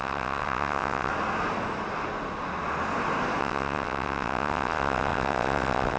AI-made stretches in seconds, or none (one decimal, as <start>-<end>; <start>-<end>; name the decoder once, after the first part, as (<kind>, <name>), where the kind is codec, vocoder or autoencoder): 0.0-1.1 (vocoder, WaveNeXt); 3.4-6.0